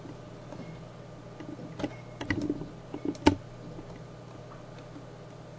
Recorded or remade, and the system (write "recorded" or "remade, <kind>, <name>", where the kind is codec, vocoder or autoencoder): recorded